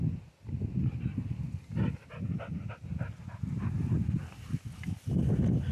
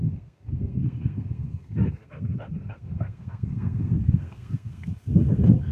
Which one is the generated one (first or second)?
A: second